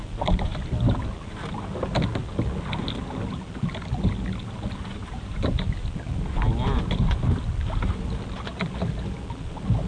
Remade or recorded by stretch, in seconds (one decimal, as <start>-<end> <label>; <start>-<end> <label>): 0.0-5.0 recorded; 5.0-5.5 remade; 5.5-9.9 recorded